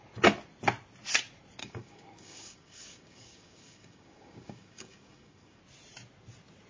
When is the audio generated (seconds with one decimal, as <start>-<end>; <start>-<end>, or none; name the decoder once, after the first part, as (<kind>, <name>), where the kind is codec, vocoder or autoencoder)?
1.6-5.6 (codec, DAC)